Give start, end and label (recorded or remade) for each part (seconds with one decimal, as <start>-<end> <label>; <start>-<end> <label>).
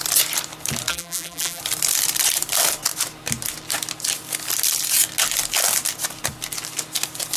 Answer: 0.0-0.9 recorded; 0.9-1.6 remade; 1.6-7.4 recorded